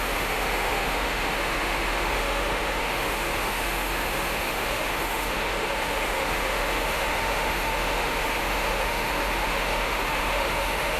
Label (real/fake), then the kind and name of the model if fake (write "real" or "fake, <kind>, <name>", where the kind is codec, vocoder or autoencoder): fake, autoencoder, DAC-VAE